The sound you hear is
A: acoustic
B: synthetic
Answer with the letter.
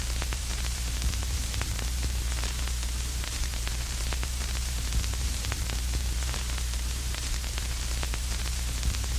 B